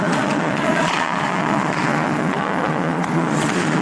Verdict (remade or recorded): remade